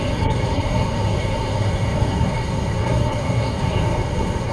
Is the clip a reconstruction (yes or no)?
yes